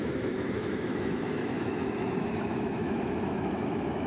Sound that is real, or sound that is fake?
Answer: fake